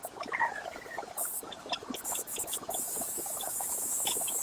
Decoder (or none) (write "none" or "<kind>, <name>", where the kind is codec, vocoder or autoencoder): autoencoder, DAC-VAE